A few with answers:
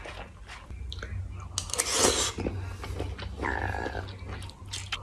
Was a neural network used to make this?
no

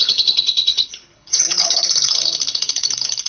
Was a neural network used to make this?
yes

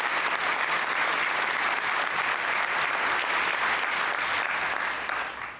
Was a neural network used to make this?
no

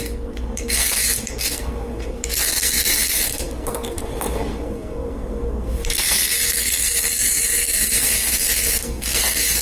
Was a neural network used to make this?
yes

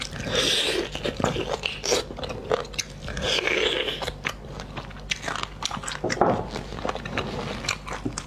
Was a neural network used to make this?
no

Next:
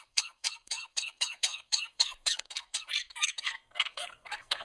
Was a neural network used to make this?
yes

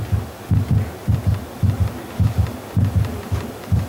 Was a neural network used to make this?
yes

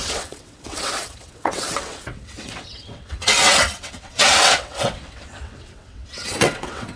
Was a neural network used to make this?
yes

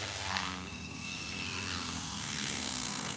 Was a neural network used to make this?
yes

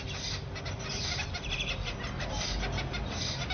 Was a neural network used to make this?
no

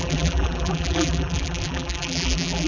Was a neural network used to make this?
yes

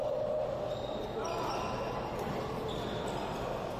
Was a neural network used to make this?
no